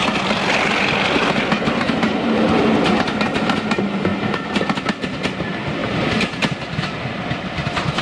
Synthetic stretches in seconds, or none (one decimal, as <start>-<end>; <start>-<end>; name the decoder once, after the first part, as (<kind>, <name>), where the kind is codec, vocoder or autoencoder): 0.0-3.2 (vocoder, BigVGAN v2)